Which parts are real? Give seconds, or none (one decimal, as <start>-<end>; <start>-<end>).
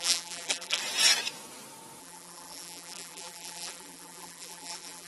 0.8-2.0